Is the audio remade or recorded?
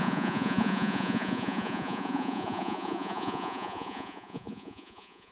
remade